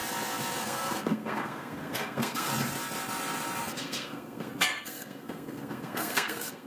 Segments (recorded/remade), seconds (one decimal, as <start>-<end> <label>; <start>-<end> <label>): 0.0-0.6 recorded; 0.6-2.5 remade; 2.5-3.6 recorded; 3.6-6.7 remade